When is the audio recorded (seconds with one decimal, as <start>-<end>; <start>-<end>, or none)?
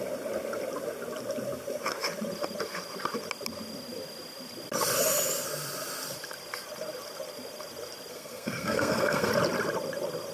0.0-8.1; 9.3-10.3